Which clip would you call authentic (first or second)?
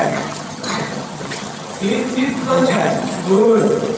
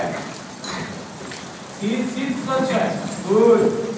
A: second